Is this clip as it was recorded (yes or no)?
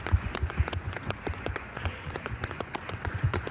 no